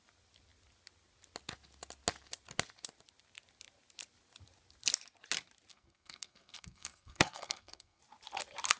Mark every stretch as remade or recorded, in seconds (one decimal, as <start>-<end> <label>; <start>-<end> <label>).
0.0-5.7 recorded; 5.7-8.0 remade; 8.0-8.8 recorded

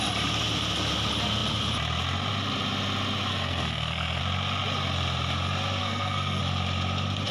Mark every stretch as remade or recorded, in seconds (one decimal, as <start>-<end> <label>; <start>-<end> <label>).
0.0-3.3 recorded; 3.3-4.2 remade; 4.2-5.8 recorded; 5.8-6.4 remade; 6.4-7.3 recorded

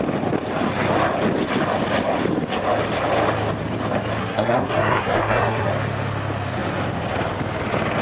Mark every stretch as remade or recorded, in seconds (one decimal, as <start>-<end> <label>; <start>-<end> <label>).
0.0-4.2 recorded; 4.2-5.7 remade; 5.7-8.0 recorded

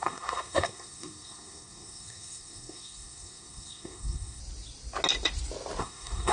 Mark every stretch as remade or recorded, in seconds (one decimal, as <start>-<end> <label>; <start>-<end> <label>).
0.0-4.4 remade; 4.4-5.8 recorded; 5.8-6.3 remade

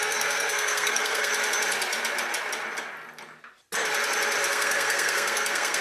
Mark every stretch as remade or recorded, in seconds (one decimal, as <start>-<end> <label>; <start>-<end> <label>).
0.0-1.3 remade; 1.3-4.5 recorded; 4.5-5.8 remade

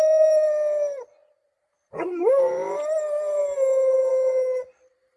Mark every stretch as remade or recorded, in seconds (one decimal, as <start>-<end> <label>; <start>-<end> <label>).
0.0-5.2 recorded

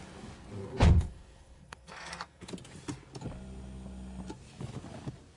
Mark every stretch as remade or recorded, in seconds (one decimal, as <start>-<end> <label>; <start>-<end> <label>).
0.0-0.6 recorded; 0.6-2.5 remade; 2.5-5.4 recorded

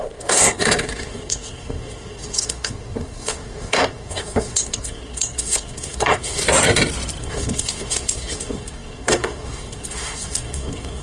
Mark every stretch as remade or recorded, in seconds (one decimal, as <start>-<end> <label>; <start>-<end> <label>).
0.0-6.4 remade; 6.4-7.2 recorded; 7.2-11.0 remade